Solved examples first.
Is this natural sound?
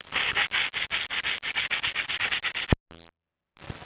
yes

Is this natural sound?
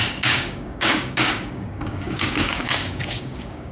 no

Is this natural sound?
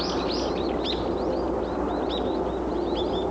yes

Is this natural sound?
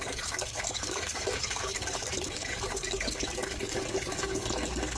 no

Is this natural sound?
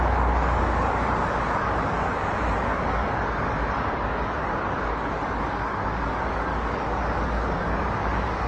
no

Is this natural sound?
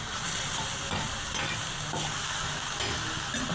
yes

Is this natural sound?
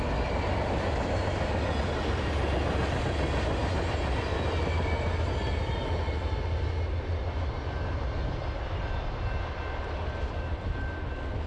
yes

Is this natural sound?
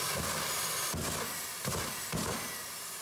yes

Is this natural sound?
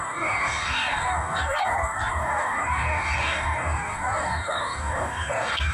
no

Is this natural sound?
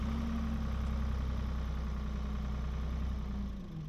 yes